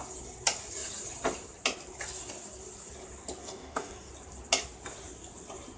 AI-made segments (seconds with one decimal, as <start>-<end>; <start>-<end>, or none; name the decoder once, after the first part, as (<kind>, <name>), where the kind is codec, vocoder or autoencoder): 3.4-4.1 (codec, DAC)